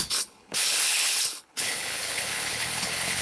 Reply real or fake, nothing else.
fake